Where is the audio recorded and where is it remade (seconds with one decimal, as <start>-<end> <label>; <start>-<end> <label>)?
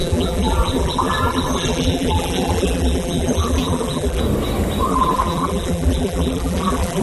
0.0-4.2 remade; 4.2-4.9 recorded; 4.9-7.0 remade